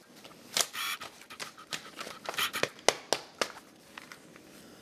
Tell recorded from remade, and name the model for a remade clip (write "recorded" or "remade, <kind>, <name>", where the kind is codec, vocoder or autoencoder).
recorded